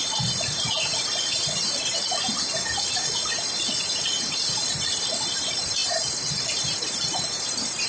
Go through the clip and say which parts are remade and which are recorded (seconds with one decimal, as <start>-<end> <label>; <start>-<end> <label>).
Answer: 0.0-4.7 recorded; 4.7-5.8 remade; 5.8-6.6 recorded; 6.6-7.9 remade